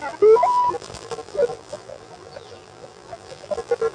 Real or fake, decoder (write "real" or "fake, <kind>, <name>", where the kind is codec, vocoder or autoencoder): fake, vocoder, BigVGAN v2